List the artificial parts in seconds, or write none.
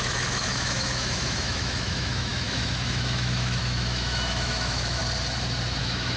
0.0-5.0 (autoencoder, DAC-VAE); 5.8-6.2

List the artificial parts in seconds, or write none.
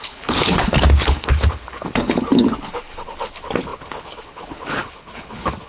0.0-5.7 (codec, HILCodec)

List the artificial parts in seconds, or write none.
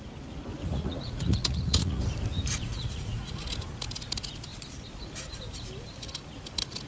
0.5-2.0 (vocoder, Vocos); 2.6-3.3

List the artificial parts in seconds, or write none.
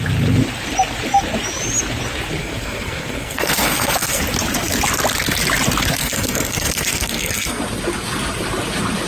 2.4-4.2 (codec, SNAC); 6.0-7.6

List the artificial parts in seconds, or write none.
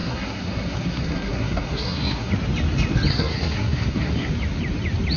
0.0-2.3 (codec, SNAC); 3.1-4.3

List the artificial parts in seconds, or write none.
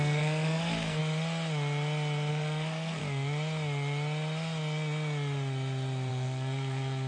0.0-1.0 (codec, SNAC); 2.3-3.0; 6.1-7.1